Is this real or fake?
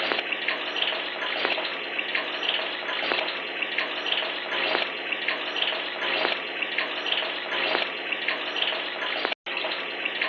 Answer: real